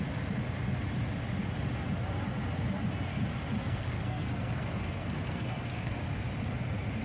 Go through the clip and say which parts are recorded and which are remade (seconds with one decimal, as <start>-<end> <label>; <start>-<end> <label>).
0.0-3.6 recorded; 3.6-6.0 remade; 6.0-7.0 recorded